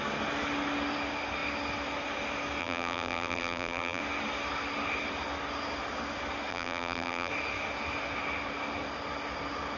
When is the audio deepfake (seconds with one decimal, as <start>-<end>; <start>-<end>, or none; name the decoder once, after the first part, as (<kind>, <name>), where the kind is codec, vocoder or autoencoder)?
2.6-4.0 (vocoder, BigVGAN v2); 6.5-7.3